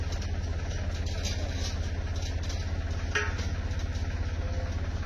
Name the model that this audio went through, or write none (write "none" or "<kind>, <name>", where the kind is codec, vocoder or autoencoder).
none